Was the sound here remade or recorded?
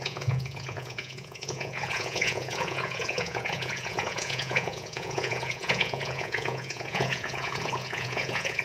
remade